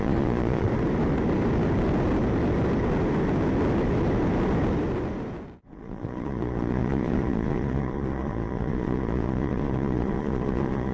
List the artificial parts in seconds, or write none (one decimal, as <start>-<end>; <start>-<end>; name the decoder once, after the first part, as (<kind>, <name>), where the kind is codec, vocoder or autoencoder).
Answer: 0.0-0.7 (vocoder, Vocos); 5.7-10.9